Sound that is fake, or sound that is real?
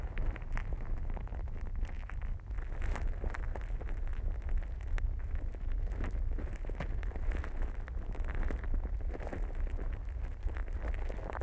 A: real